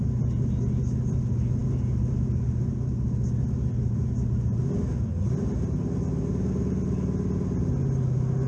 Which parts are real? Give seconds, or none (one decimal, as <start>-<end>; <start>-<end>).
0.0-8.5